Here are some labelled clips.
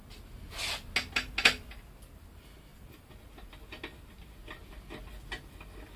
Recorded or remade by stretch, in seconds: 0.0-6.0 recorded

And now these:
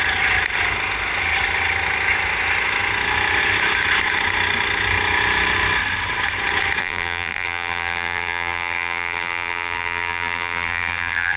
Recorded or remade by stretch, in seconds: 0.0-6.8 recorded; 6.8-11.4 remade

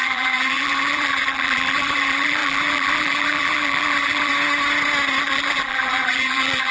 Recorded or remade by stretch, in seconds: 0.0-4.3 remade; 4.3-5.2 recorded; 5.2-6.7 remade

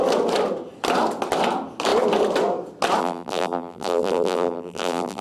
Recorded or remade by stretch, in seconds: 0.0-3.0 recorded; 3.0-5.2 remade

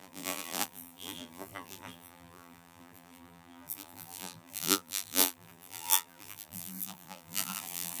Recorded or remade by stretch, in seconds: 0.0-8.0 remade

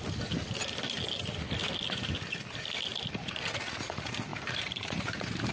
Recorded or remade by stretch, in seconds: 0.0-2.9 recorded; 2.9-3.4 remade; 3.4-4.3 recorded; 4.3-5.5 remade